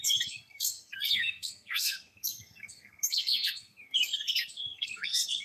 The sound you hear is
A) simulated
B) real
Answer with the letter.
A